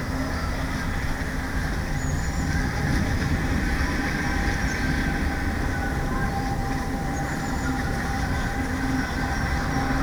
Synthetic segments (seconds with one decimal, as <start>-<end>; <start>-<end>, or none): 6.6-9.5